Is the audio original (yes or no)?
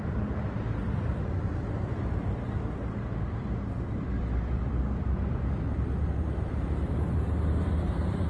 no